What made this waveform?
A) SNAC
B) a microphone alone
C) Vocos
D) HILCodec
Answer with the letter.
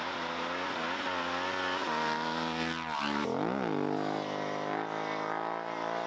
B